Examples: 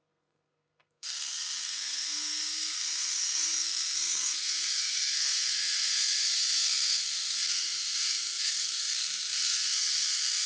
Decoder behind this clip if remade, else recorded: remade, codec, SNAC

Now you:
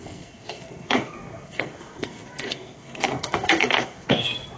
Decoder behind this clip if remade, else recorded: remade, codec, SNAC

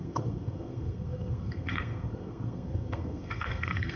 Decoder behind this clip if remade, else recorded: remade, codec, SNAC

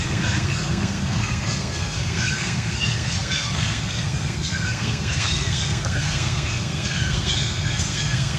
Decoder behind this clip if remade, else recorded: remade, codec, SNAC